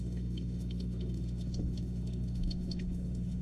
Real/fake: fake